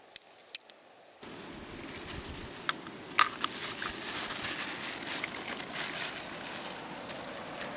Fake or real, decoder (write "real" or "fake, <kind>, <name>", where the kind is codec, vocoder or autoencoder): real